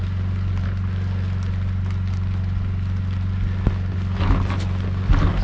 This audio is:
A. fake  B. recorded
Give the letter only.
B